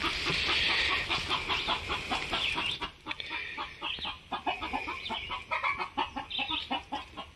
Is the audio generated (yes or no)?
no